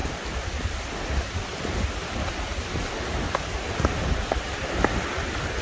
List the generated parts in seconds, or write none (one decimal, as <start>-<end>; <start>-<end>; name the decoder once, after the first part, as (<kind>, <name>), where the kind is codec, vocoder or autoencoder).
0.0-5.6 (vocoder, BigVGAN v2)